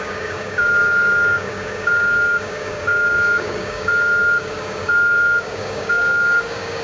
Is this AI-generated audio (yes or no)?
yes